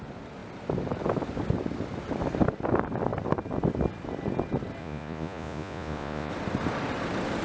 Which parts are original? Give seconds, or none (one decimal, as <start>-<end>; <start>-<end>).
0.0-4.8; 6.3-7.4